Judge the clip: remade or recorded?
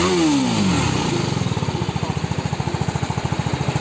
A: recorded